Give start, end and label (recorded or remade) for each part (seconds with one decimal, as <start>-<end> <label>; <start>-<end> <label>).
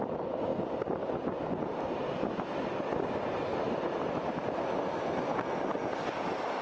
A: 0.0-6.6 recorded